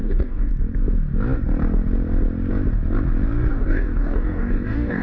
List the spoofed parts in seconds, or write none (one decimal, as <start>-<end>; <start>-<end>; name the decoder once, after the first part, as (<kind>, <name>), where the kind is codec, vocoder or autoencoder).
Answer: 0.0-0.5 (codec, DAC); 3.5-5.0